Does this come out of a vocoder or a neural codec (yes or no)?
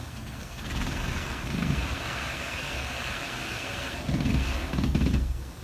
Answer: yes